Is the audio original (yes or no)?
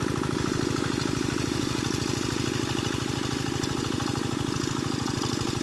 yes